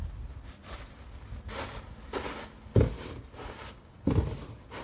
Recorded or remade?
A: recorded